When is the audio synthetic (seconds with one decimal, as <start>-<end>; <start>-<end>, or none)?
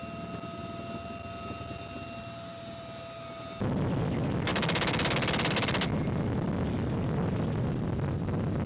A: none